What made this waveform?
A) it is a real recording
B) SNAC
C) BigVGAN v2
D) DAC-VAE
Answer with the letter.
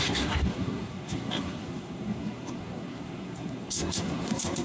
B